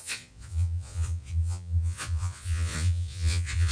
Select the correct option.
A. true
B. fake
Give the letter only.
B